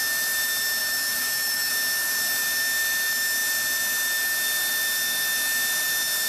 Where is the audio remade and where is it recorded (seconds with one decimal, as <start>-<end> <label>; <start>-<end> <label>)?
0.0-0.8 recorded; 0.8-1.7 remade; 1.7-6.3 recorded